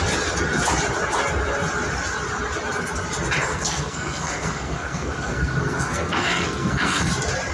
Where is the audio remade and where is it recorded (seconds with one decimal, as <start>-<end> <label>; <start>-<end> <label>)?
0.0-3.5 recorded; 3.5-7.1 remade; 7.1-7.5 recorded

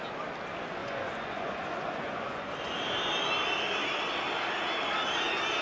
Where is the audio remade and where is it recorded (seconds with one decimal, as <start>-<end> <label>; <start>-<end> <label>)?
0.0-0.8 recorded; 0.8-2.5 remade; 2.5-5.6 recorded

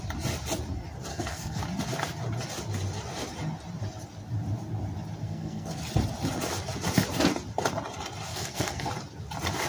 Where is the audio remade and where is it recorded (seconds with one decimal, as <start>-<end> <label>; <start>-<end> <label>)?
0.0-1.1 recorded; 1.1-1.6 remade; 1.6-5.2 recorded; 5.2-5.8 remade; 5.8-8.3 recorded; 8.3-8.9 remade; 8.9-9.7 recorded

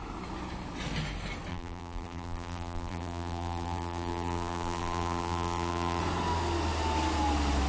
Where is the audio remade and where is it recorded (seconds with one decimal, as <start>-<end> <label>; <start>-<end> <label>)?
0.0-1.5 recorded; 1.5-6.0 remade; 6.0-7.7 recorded

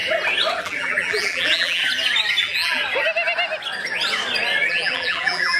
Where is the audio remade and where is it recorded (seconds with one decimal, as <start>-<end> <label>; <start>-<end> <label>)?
0.0-0.6 recorded; 0.6-1.8 remade; 1.8-2.4 recorded; 2.4-2.8 remade; 2.8-4.7 recorded; 4.7-5.6 remade

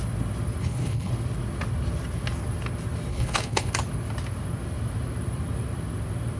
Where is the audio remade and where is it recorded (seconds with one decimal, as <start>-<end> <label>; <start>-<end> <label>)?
0.0-0.6 recorded; 0.6-1.1 remade; 1.1-3.1 recorded; 3.1-3.7 remade; 3.7-6.4 recorded